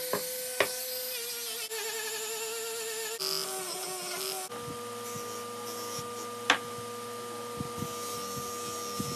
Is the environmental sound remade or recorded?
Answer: recorded